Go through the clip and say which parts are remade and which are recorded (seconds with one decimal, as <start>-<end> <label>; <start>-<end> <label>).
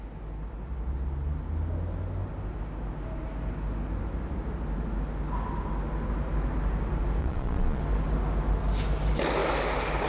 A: 0.0-7.2 recorded; 7.2-7.8 remade; 7.8-10.1 recorded